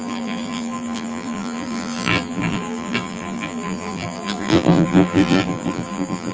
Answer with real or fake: fake